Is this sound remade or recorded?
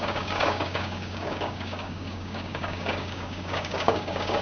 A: remade